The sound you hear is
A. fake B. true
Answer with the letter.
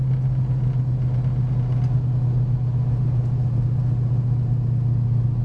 B